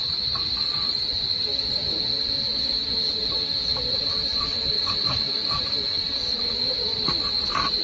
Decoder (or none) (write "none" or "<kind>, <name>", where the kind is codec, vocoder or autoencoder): none